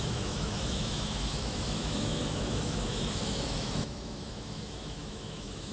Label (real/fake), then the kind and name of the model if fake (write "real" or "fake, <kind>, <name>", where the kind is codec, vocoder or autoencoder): fake, autoencoder, DAC-VAE